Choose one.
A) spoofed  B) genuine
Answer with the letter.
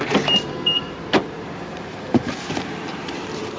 A